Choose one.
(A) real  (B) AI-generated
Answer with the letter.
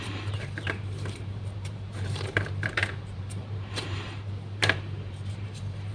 B